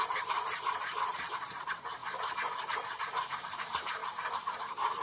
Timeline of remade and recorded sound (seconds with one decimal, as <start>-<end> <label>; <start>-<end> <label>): 0.0-2.0 remade; 2.0-3.6 recorded; 3.6-4.0 remade; 4.0-4.6 recorded; 4.6-5.0 remade